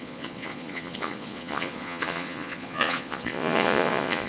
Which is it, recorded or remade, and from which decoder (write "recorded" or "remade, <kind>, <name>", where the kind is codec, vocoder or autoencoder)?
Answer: remade, vocoder, Vocos